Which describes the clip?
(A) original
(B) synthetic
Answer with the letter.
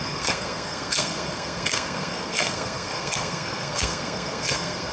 B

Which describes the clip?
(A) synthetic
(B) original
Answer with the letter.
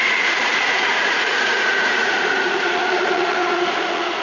A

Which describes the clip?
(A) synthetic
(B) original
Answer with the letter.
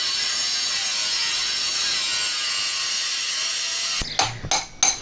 B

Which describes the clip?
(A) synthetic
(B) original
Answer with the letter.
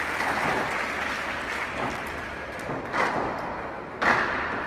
B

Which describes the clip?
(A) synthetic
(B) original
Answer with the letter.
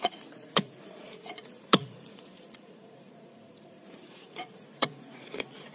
A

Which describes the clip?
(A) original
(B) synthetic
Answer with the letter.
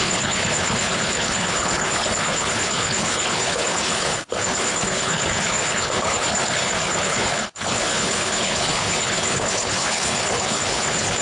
B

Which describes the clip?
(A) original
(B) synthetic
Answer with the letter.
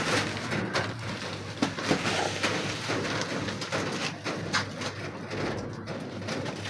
A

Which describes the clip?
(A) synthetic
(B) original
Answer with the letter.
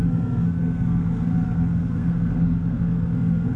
A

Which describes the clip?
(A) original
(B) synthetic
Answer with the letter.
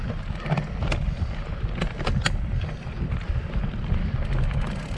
A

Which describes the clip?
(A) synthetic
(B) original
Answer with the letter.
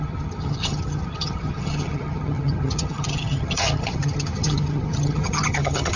A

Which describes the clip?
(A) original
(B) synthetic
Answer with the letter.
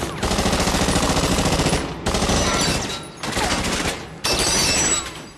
A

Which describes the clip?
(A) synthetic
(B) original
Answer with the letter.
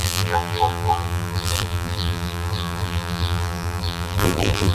A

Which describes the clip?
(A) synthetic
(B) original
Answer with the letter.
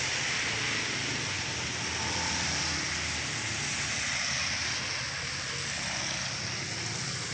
B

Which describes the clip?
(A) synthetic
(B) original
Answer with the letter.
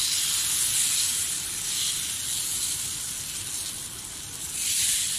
B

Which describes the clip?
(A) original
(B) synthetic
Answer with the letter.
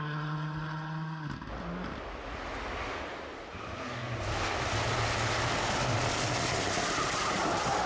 A